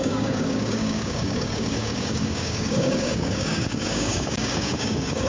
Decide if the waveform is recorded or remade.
remade